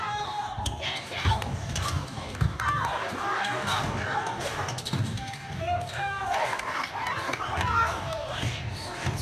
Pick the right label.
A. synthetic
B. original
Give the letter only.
A